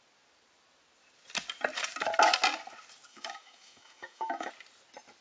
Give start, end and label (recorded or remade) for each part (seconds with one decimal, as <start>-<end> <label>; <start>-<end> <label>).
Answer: 0.0-3.1 recorded; 3.1-4.5 remade; 4.5-5.2 recorded